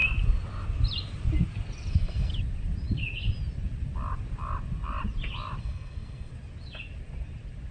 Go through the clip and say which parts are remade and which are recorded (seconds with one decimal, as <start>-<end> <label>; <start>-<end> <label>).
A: 0.0-1.9 recorded; 1.9-2.3 remade; 2.3-5.6 recorded; 5.6-6.3 remade; 6.3-7.7 recorded